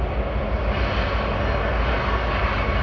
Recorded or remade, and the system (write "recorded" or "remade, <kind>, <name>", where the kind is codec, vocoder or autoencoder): recorded